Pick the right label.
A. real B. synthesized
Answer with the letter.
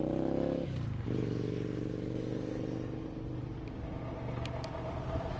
A